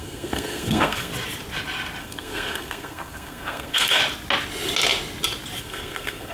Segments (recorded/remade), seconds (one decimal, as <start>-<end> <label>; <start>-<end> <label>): 0.0-1.1 remade; 1.1-2.0 recorded; 2.0-4.0 remade; 4.0-5.6 recorded; 5.6-6.3 remade